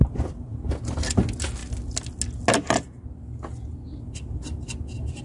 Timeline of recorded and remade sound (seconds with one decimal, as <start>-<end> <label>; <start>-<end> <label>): 0.0-5.2 recorded